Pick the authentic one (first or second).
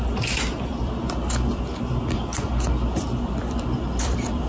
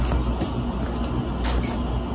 second